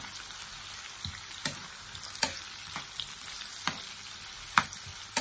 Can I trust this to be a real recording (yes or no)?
no